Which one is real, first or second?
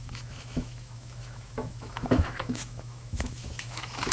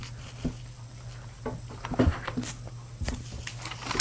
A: second